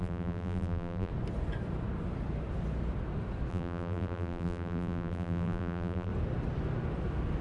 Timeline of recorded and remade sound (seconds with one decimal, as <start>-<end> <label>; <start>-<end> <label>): 0.0-1.1 remade; 1.1-3.5 recorded; 3.5-6.1 remade; 6.1-7.4 recorded